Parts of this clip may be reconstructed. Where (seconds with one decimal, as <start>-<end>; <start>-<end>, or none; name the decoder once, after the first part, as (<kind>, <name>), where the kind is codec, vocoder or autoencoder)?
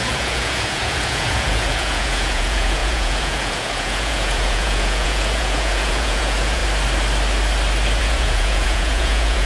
0.0-6.6 (vocoder, Vocos); 8.0-9.5